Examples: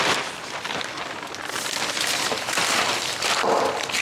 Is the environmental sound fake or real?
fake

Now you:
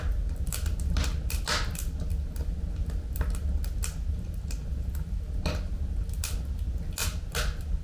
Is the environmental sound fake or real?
real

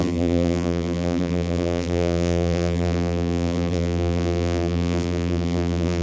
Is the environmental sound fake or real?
fake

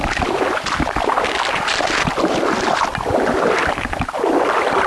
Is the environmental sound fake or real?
real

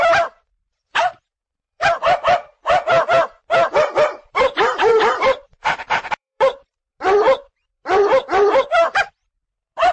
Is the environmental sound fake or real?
fake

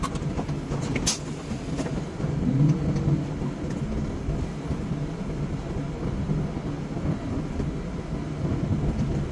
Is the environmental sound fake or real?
real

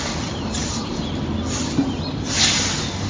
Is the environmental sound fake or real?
real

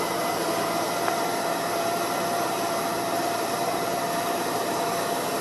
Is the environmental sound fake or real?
fake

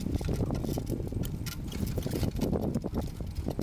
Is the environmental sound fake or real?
real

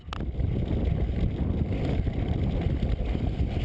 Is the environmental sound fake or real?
real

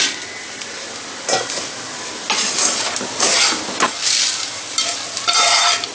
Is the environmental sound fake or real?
real